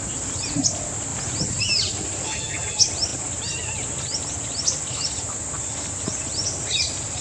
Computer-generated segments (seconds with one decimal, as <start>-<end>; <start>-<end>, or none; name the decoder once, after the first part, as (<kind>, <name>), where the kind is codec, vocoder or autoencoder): none